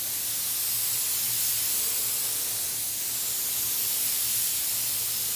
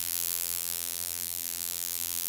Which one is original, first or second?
first